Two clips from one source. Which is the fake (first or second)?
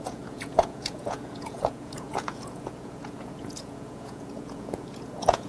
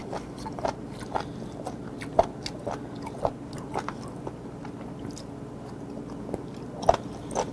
first